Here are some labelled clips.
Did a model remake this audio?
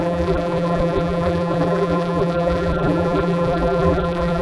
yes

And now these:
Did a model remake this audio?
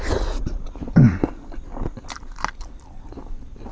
no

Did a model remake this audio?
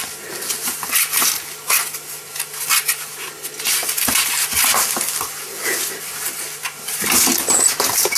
no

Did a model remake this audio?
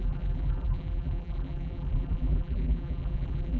yes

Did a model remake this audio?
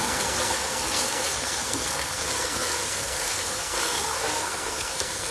yes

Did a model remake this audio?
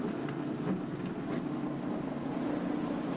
no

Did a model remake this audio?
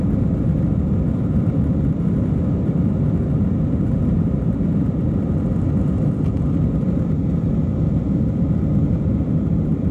no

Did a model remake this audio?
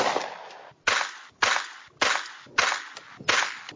no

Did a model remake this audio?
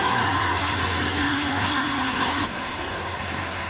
yes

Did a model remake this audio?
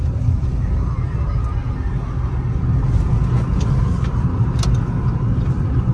no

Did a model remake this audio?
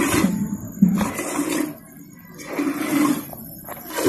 no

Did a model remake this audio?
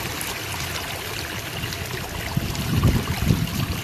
no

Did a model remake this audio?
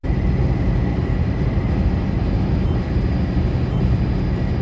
no